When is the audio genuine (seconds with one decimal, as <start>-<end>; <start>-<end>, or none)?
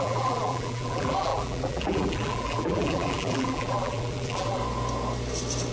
4.6-5.7